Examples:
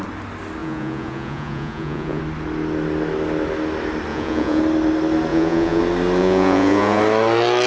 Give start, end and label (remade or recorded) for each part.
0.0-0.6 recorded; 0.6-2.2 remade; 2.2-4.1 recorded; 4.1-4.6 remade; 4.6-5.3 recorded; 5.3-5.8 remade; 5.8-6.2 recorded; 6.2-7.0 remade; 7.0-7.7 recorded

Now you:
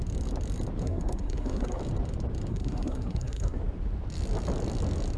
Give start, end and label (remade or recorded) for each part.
0.0-0.8 recorded; 0.8-1.8 remade; 1.8-2.5 recorded; 2.5-3.6 remade; 3.6-5.2 recorded

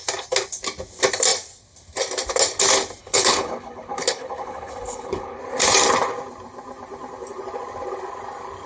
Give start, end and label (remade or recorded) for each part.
0.0-3.0 recorded; 3.0-5.4 remade; 5.4-8.7 recorded